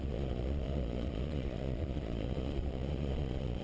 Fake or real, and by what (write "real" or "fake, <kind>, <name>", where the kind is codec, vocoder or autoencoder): fake, vocoder, Vocos